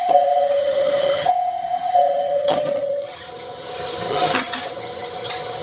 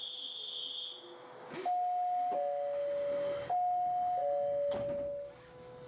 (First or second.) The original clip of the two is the second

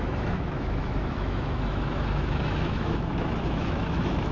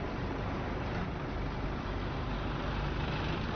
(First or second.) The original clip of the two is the second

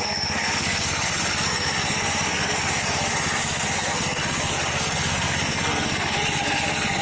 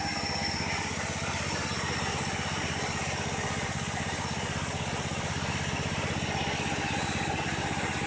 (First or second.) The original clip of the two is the second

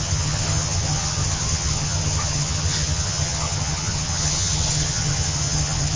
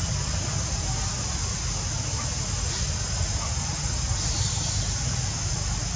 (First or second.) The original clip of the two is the second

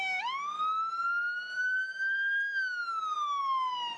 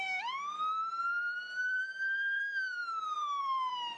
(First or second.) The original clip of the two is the first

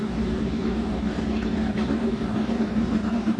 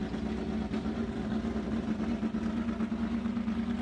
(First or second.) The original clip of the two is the second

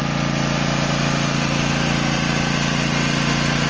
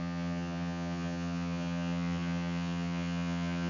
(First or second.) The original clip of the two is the first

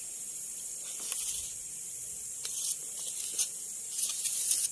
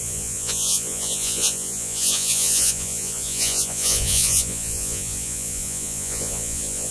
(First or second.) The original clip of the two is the first